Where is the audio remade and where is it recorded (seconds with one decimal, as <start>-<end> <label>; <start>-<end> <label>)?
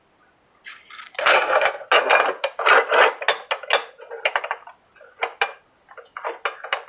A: 0.0-1.2 recorded; 1.2-1.9 remade; 1.9-6.9 recorded